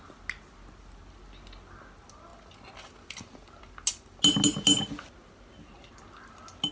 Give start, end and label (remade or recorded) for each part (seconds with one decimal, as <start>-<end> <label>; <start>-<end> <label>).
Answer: 0.0-6.7 recorded